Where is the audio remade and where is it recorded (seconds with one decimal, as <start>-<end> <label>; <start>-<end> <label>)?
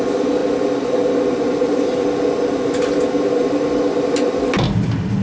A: 0.0-5.2 recorded